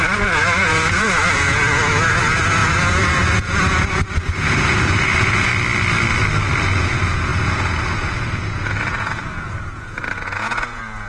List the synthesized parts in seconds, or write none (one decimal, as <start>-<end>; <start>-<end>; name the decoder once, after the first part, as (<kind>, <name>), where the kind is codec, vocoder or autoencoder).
0.0-5.5 (vocoder, Vocos); 6.7-11.1